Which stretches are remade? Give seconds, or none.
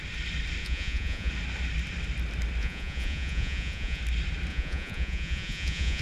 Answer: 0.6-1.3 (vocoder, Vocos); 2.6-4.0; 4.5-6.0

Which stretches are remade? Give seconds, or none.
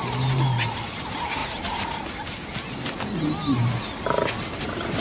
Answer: none